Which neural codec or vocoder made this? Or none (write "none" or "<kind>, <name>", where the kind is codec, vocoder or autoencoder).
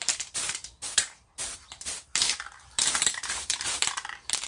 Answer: vocoder, BigVGAN v2